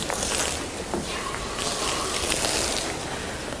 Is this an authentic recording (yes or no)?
yes